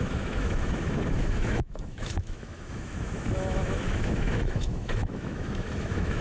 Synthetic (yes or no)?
yes